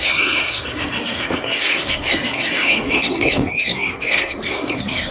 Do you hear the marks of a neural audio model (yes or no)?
yes